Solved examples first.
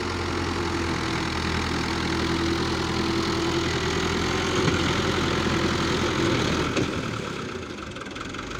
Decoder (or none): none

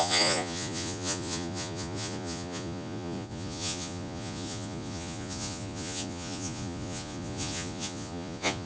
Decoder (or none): vocoder, Vocos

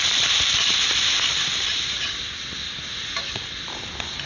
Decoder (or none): none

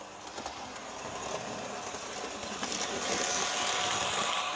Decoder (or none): none